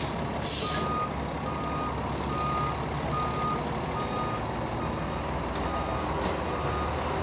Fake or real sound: real